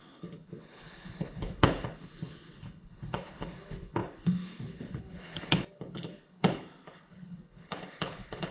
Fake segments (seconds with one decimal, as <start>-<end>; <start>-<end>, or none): 0.0-8.5